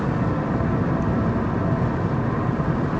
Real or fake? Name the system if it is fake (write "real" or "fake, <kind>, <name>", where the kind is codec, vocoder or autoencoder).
real